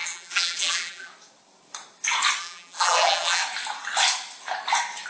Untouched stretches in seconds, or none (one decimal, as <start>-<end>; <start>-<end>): 1.1-2.4; 3.4-5.1